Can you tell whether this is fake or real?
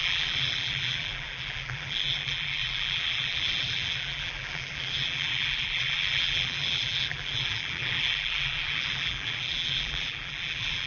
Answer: fake